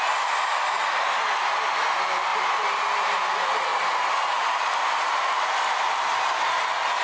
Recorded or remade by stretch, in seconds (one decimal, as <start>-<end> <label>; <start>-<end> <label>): 0.0-7.0 recorded